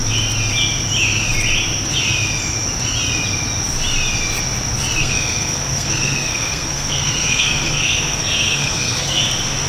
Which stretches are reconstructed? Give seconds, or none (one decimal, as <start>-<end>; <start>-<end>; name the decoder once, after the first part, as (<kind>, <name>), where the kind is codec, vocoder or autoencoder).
5.0-9.2 (codec, SNAC)